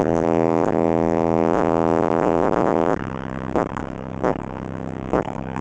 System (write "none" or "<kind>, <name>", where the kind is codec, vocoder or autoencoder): codec, DAC